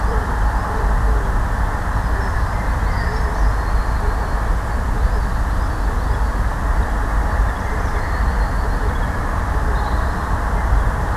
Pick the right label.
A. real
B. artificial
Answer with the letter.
A